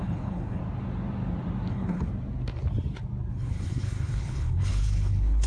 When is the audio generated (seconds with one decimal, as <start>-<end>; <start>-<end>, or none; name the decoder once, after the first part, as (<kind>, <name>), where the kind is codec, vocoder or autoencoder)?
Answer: 0.0-0.6 (codec, HILCodec); 1.7-2.1; 3.3-5.5